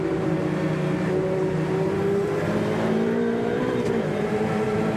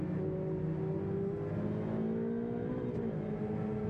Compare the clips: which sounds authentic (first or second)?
second